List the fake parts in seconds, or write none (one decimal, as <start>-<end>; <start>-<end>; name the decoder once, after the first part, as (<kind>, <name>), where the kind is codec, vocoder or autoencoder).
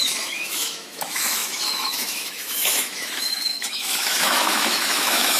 0.0-5.4 (autoencoder, DAC-VAE)